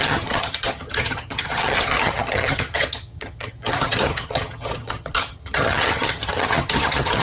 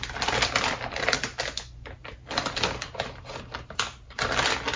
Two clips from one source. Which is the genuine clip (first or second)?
second